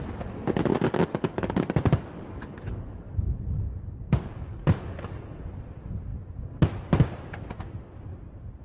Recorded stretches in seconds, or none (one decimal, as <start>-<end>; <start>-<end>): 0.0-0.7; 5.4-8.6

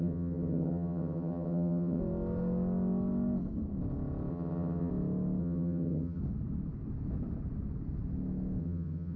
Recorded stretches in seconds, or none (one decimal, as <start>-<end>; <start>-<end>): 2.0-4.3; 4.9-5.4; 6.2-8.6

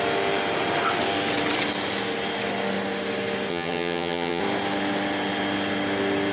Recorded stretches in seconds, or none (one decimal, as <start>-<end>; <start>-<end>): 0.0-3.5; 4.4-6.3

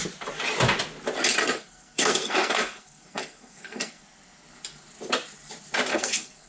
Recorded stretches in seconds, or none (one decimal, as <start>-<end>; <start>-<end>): 0.0-1.4; 4.0-5.9

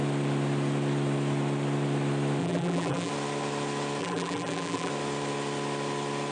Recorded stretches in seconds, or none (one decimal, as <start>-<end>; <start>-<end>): 0.0-2.4; 3.1-4.0; 4.9-6.3

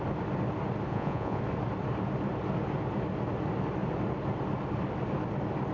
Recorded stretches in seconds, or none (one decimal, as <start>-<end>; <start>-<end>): 0.0-0.9; 1.4-5.7